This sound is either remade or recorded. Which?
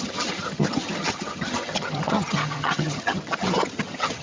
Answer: remade